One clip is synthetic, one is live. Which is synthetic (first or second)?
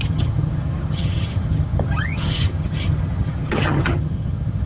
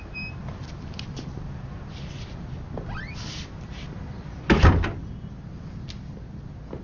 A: first